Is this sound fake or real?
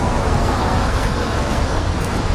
fake